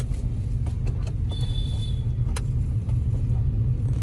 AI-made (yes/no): no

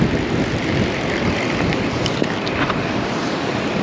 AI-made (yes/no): yes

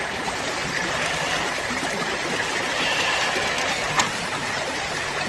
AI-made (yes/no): yes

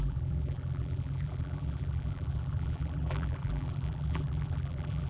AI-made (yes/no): yes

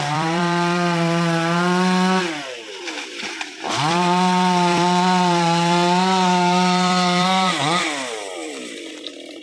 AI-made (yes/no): yes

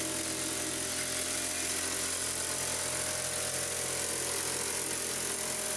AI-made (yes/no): no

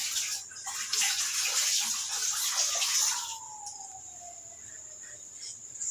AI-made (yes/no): no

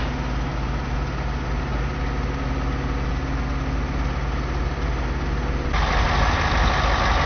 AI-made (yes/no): no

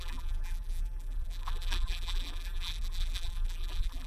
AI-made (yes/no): yes